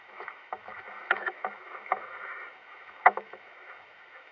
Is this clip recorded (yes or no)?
no